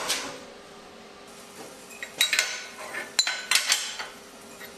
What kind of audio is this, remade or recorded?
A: recorded